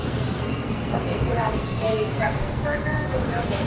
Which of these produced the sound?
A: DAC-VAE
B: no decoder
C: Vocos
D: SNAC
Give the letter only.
D